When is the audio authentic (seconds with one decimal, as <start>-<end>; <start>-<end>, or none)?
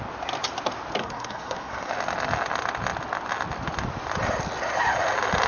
0.0-1.0; 1.9-5.5